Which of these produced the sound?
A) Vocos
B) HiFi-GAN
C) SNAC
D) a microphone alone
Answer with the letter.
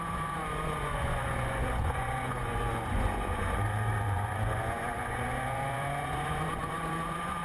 A